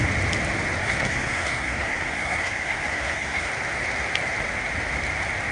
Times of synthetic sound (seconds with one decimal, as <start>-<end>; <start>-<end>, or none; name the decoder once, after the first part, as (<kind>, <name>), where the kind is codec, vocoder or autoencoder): 0.8-3.5 (codec, SNAC)